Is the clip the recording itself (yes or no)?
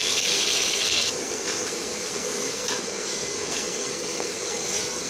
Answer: no